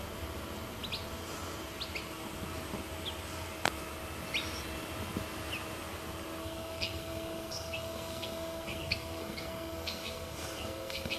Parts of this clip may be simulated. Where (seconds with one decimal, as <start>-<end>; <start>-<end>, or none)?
6.4-11.2